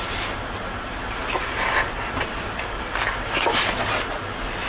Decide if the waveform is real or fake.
real